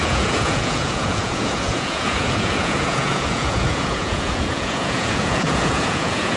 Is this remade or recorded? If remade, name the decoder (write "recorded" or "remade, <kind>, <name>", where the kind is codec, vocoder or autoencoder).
remade, vocoder, Vocos